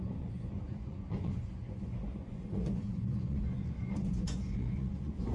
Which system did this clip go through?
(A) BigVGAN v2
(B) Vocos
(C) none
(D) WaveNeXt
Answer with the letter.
B